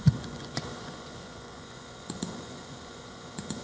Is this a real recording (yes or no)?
no